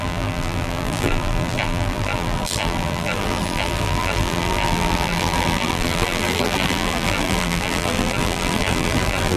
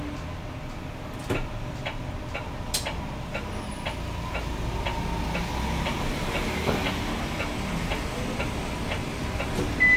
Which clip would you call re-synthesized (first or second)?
first